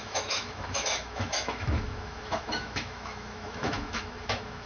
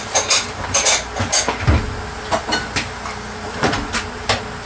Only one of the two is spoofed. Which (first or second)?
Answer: first